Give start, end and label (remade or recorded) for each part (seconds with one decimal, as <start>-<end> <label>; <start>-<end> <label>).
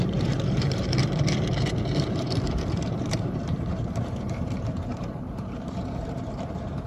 0.0-6.9 remade